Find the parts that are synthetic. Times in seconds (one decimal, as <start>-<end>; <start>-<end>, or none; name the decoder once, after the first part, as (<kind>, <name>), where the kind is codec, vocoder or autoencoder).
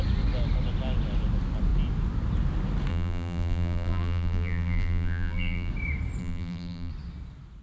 2.9-5.7 (vocoder, BigVGAN v2); 6.2-6.9